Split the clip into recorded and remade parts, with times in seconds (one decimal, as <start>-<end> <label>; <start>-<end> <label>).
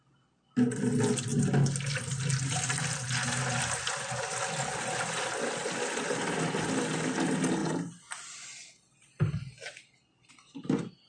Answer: 0.0-11.1 recorded